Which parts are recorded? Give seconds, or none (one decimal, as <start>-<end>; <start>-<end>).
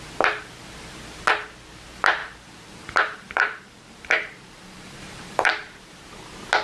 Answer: 0.0-2.2; 5.5-6.6